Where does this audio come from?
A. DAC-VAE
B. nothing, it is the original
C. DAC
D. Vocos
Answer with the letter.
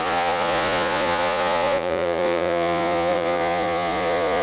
D